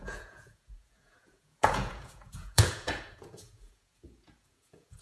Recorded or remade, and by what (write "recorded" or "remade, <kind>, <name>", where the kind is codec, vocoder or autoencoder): remade, vocoder, Vocos